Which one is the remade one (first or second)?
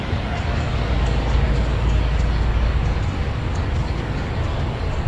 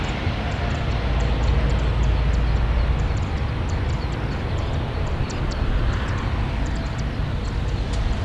first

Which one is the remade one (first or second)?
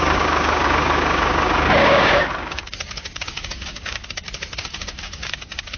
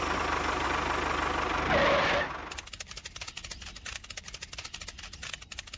first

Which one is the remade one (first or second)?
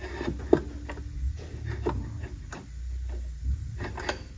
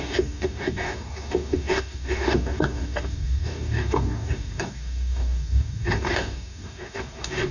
second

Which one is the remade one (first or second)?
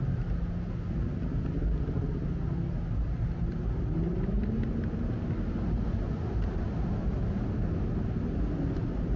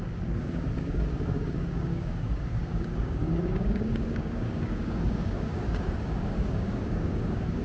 second